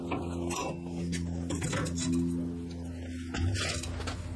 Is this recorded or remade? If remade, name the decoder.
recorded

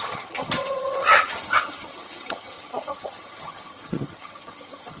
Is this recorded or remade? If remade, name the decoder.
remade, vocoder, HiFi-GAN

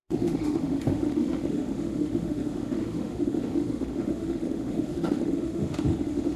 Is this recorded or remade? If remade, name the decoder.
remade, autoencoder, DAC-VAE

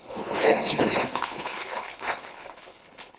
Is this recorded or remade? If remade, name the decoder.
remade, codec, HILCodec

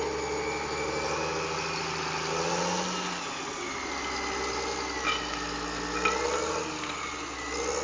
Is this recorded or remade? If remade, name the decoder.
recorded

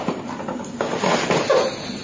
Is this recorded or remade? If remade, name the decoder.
recorded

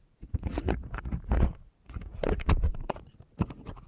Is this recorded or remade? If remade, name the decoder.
remade, vocoder, Vocos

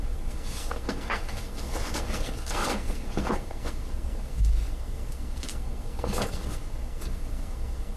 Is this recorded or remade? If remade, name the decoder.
remade, codec, SNAC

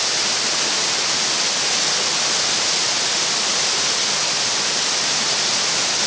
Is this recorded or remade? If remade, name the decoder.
recorded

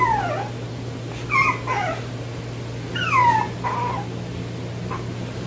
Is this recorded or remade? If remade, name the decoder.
recorded